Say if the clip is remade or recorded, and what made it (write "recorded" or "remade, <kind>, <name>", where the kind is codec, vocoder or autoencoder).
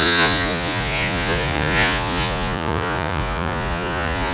remade, vocoder, Vocos